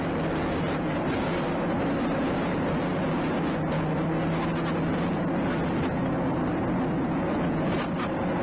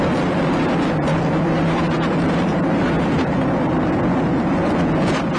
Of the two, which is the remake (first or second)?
second